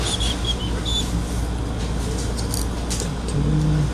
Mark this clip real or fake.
real